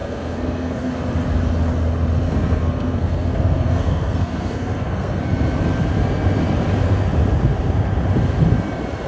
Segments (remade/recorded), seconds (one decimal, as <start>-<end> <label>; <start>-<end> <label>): 0.0-0.9 remade; 0.9-2.2 recorded; 2.2-5.2 remade; 5.2-9.1 recorded